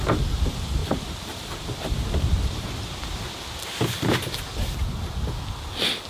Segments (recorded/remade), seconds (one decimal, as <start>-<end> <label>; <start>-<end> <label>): 0.0-0.8 recorded; 0.8-4.5 remade; 4.5-6.1 recorded